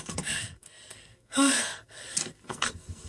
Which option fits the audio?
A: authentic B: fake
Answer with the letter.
B